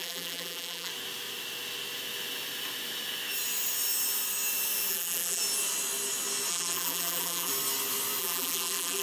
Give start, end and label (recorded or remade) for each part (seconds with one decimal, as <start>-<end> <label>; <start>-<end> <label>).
0.0-0.9 remade; 0.9-4.9 recorded; 4.9-5.4 remade; 5.4-6.5 recorded; 6.5-7.5 remade; 7.5-8.2 recorded; 8.2-9.0 remade